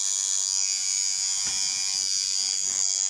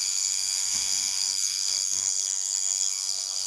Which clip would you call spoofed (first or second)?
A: second